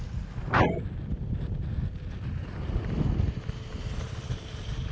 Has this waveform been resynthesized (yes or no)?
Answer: no